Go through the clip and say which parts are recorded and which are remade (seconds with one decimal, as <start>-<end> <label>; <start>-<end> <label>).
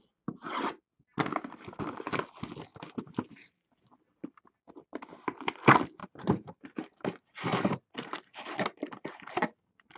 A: 0.0-2.7 recorded; 2.7-3.7 remade; 3.7-6.0 recorded; 6.0-10.0 remade